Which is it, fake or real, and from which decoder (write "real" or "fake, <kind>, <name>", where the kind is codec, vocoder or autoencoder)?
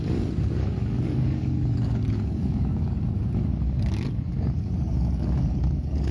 fake, codec, DAC